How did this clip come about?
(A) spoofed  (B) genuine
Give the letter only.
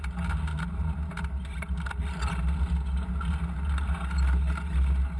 B